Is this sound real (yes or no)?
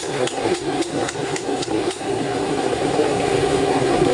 no